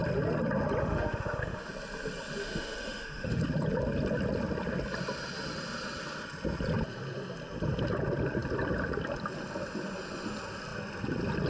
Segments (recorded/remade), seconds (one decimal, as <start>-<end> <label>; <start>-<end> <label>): 0.0-0.8 recorded; 0.8-1.7 remade; 1.7-2.4 recorded; 2.4-3.4 remade; 3.4-11.5 recorded

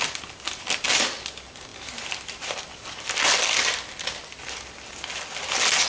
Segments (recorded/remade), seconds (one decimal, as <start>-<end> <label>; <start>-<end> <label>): 0.0-5.9 recorded

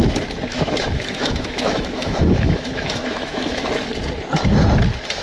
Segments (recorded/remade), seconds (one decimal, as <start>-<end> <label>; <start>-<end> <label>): 0.0-0.5 recorded; 0.5-3.6 remade; 3.6-5.2 recorded

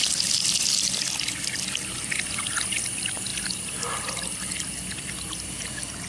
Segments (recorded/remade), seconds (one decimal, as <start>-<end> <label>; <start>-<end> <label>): 0.0-6.1 recorded

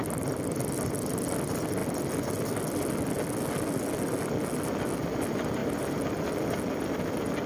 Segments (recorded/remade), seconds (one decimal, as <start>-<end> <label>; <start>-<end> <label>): 0.0-5.6 recorded; 5.6-6.1 remade; 6.1-7.5 recorded

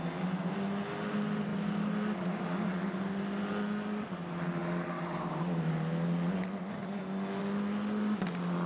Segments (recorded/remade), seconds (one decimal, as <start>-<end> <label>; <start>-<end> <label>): 0.0-8.7 recorded

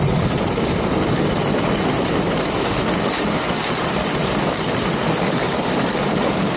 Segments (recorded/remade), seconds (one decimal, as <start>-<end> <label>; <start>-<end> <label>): 0.0-6.6 recorded

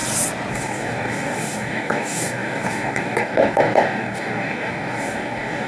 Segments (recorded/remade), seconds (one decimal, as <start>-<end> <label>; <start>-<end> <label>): 0.0-0.5 recorded; 0.5-5.7 remade